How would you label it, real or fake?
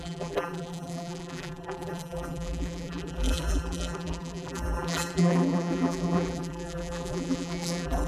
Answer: fake